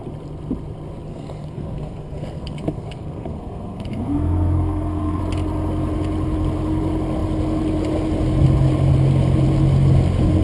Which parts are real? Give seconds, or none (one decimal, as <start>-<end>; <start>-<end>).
0.0-1.1; 5.2-10.4